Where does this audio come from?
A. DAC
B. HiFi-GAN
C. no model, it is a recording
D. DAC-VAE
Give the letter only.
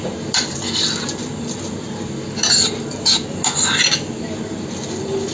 C